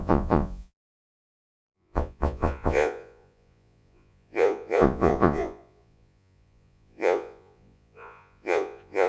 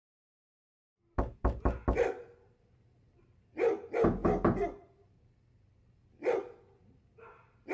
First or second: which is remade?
first